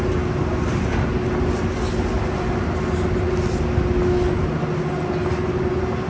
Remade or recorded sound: recorded